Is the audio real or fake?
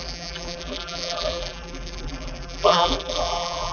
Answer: fake